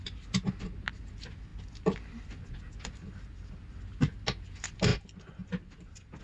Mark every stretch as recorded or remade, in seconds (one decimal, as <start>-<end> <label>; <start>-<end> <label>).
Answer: 0.0-1.5 recorded; 1.5-3.6 remade; 3.6-4.9 recorded; 4.9-6.2 remade